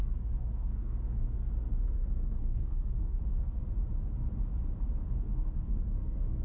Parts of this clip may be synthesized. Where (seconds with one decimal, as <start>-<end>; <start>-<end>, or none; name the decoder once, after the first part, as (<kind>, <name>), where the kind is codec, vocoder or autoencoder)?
0.0-3.6 (codec, SNAC); 5.1-6.4